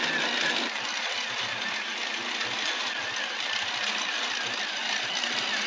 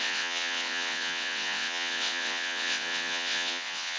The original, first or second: first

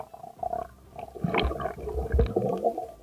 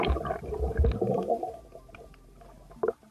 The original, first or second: first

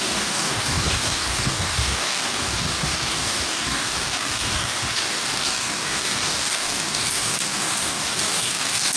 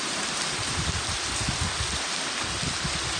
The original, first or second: second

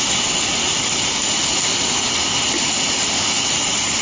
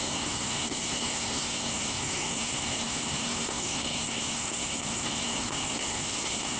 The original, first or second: first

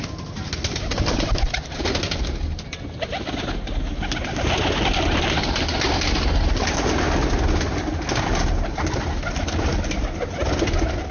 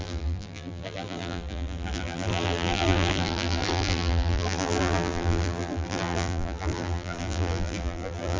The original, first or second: first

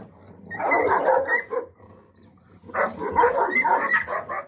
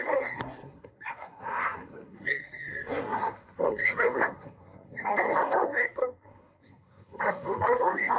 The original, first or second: first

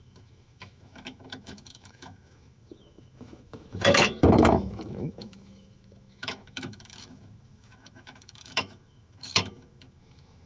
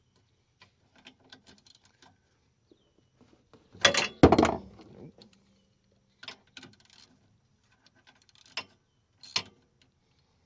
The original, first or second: second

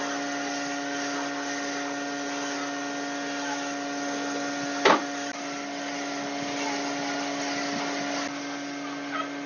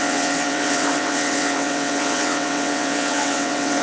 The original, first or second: first